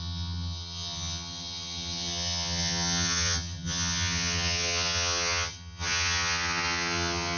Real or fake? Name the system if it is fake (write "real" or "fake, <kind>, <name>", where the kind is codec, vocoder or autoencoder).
fake, vocoder, HiFi-GAN